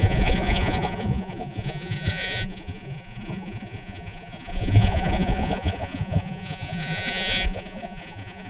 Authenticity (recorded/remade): remade